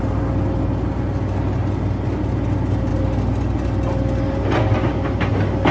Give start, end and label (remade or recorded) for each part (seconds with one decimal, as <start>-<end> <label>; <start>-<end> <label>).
0.0-5.7 recorded